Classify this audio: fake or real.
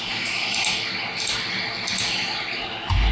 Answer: real